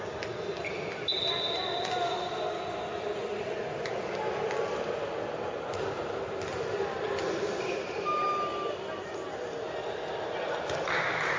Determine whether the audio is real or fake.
real